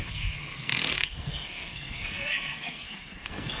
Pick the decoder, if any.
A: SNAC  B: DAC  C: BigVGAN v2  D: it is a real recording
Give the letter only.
A